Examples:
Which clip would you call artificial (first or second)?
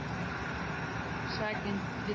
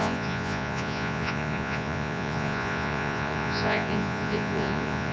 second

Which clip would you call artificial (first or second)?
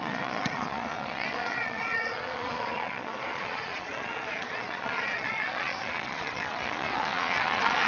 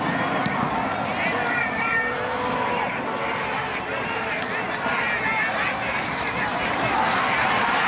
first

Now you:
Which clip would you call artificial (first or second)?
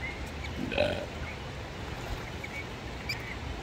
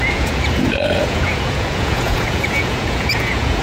second